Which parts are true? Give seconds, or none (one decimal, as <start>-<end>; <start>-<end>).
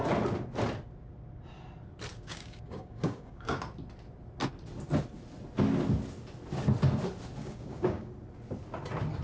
0.0-2.1; 3.6-7.4; 8.1-9.2